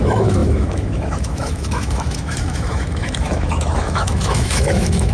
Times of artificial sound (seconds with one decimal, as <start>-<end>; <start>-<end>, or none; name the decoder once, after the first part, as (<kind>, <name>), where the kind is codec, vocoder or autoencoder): 0.0-5.1 (autoencoder, DAC-VAE)